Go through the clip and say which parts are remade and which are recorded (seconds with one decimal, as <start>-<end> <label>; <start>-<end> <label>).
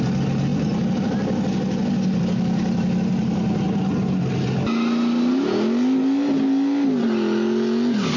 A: 0.0-8.2 recorded